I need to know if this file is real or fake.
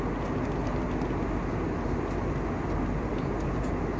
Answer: real